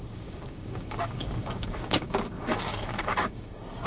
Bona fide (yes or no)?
no